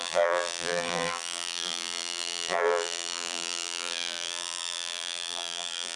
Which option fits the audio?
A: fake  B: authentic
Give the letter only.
A